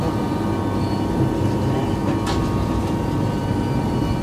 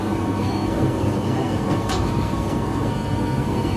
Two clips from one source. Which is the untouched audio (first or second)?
first